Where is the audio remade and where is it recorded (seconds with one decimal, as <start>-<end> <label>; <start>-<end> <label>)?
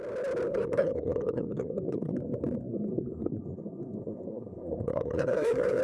0.0-0.5 recorded; 0.5-2.2 remade; 2.2-2.6 recorded; 2.6-5.8 remade